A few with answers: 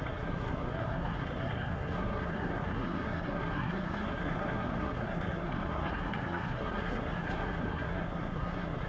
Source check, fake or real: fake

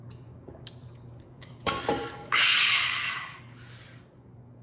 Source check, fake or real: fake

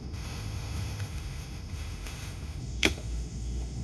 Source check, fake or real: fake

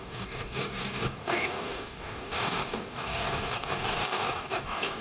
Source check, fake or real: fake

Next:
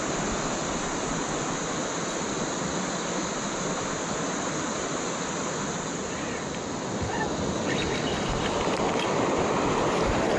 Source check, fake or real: fake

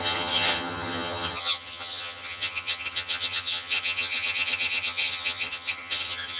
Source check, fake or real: fake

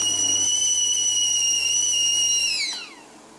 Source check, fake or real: real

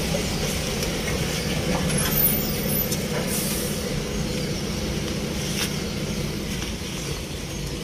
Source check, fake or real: real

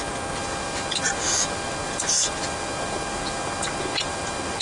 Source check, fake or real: real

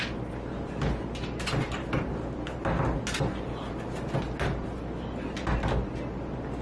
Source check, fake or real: real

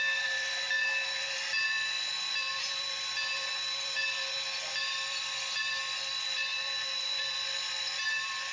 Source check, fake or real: fake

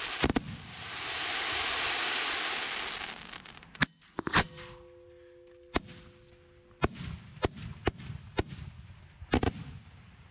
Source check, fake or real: real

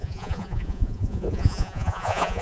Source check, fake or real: fake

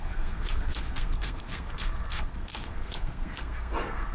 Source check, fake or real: fake